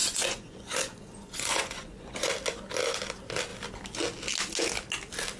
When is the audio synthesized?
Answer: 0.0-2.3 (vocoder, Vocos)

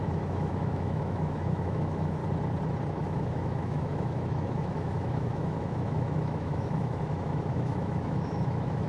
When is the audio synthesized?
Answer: 0.0-2.2 (autoencoder, DAC-VAE); 2.9-8.9

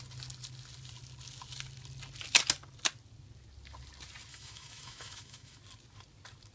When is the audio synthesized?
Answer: 4.3-5.6 (autoencoder, DAC-VAE)

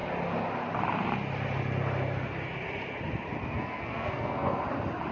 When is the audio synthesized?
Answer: 3.4-4.6 (codec, SNAC)

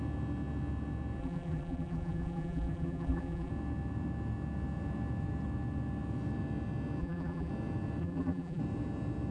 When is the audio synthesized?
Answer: 1.2-3.5 (vocoder, BigVGAN v2); 7.0-7.5; 8.0-8.6

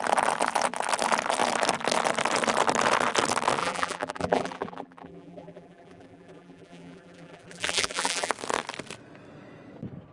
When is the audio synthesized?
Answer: 3.6-8.3 (vocoder, BigVGAN v2)

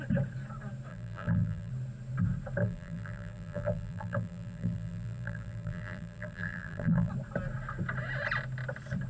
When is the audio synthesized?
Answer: 0.9-1.7 (vocoder, BigVGAN v2); 2.6-7.1

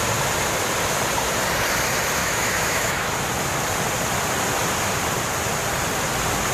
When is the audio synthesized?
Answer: 2.2-3.1 (autoencoder, DAC-VAE)